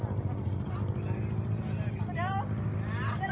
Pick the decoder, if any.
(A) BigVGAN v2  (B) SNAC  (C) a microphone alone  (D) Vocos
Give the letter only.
C